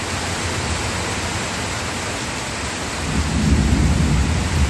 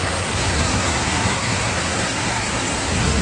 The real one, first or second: first